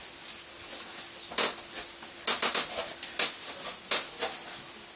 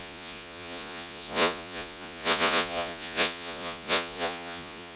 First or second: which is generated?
second